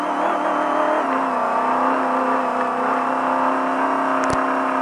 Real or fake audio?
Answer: real